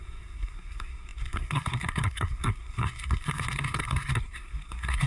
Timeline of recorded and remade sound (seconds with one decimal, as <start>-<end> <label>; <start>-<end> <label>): 0.0-5.1 remade